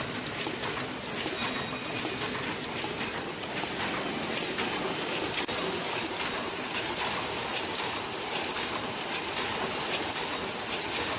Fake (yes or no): no